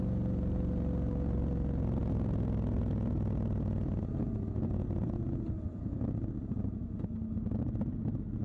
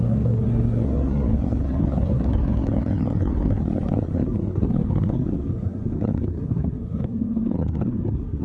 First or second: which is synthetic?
second